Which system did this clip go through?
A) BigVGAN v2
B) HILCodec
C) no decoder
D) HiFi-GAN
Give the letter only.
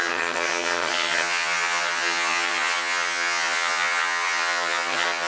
D